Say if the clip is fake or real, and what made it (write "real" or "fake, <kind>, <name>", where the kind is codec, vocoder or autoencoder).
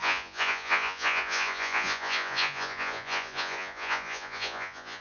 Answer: fake, vocoder, Vocos